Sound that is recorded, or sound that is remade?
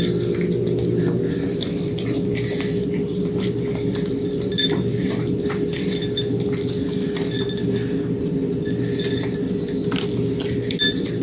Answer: recorded